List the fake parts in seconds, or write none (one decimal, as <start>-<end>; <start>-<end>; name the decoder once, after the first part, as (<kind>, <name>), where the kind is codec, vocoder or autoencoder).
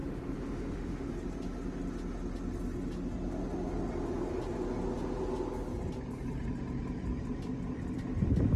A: 0.0-1.1 (autoencoder, DAC-VAE)